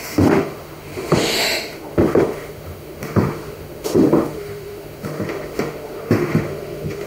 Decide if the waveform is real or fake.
fake